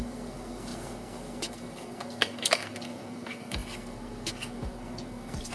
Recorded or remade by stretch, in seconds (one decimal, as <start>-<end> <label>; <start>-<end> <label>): 0.0-5.5 remade